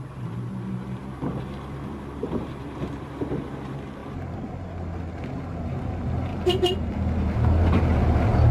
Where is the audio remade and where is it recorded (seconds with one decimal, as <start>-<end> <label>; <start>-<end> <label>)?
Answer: 0.0-1.0 recorded; 1.0-3.2 remade; 3.2-6.3 recorded; 6.3-6.9 remade; 6.9-8.5 recorded